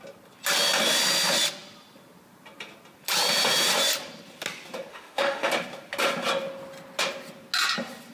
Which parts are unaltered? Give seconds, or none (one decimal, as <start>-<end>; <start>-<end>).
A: 0.0-4.9; 5.5-8.1